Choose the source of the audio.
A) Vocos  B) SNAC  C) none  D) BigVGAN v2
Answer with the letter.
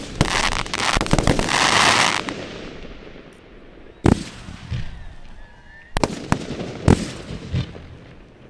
C